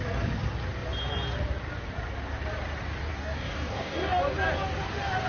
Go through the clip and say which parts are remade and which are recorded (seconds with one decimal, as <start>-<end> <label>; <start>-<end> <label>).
0.0-3.1 recorded; 3.1-4.2 remade; 4.2-5.3 recorded